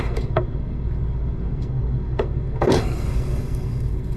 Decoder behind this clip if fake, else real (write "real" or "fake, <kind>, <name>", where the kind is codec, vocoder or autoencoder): fake, codec, SNAC